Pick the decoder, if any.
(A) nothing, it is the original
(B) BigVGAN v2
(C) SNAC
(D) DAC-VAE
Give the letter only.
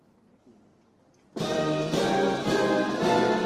B